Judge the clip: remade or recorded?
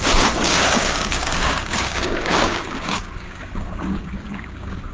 remade